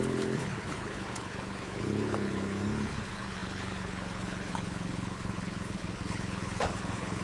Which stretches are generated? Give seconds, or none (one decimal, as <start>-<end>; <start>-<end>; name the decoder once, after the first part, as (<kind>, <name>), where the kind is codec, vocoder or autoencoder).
0.0-7.2 (codec, HILCodec)